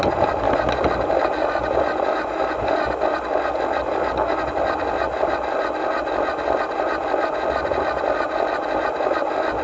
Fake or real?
real